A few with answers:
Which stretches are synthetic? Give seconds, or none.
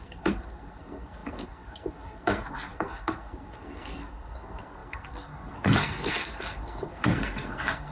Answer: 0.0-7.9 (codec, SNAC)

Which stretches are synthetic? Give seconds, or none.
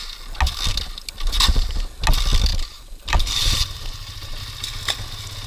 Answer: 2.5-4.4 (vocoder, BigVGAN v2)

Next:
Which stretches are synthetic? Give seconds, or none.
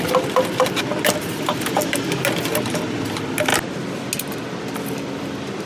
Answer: none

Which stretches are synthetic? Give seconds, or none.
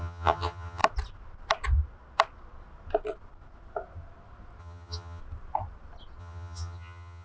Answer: 0.0-0.8 (vocoder, HiFi-GAN); 4.6-5.2; 6.2-7.2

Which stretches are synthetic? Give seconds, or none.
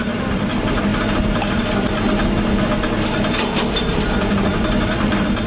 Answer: 0.0-0.9 (vocoder, BigVGAN v2); 4.1-5.5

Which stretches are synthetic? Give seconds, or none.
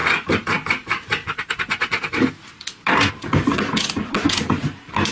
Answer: none